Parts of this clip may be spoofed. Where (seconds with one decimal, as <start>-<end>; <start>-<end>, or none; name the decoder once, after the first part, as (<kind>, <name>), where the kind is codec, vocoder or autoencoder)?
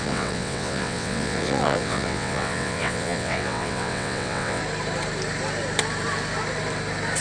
0.0-4.6 (vocoder, WaveNeXt)